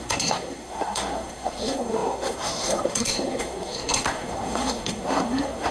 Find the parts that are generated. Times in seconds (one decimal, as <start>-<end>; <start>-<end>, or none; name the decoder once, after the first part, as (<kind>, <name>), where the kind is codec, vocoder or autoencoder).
0.0-5.7 (codec, SNAC)